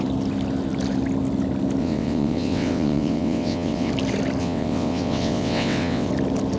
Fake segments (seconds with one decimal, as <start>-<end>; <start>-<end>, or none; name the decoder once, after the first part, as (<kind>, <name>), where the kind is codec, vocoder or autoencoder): 1.8-3.9 (vocoder, WaveNeXt); 4.4-6.1

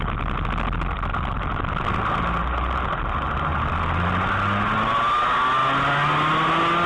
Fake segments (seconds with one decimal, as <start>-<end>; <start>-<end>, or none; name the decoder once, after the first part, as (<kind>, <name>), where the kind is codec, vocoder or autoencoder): none

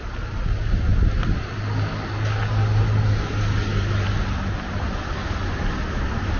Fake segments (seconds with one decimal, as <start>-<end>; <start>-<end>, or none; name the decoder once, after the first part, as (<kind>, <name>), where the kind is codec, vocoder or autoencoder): none